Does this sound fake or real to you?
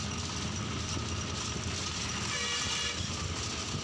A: real